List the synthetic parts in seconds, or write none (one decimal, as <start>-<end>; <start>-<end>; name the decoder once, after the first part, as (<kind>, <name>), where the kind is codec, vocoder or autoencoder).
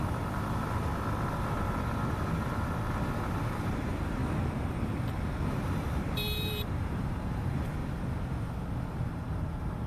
0.0-0.9 (vocoder, BigVGAN v2); 1.4-4.2; 5.7-7.8; 8.9-9.9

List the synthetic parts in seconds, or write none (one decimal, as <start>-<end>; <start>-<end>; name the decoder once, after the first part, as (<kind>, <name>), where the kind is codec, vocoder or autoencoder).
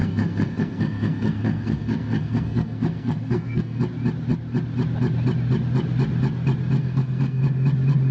0.0-3.8 (codec, SNAC); 6.8-7.4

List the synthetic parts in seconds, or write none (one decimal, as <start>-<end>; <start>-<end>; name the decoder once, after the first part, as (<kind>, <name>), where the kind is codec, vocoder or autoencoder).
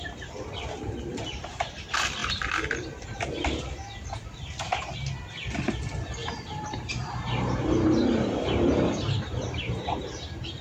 6.2-10.6 (vocoder, BigVGAN v2)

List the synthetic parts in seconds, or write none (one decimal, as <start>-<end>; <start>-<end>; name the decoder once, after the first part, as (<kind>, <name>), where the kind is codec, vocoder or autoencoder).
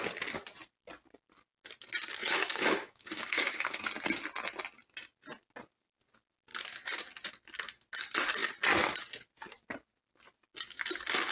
2.2-3.8 (codec, DAC)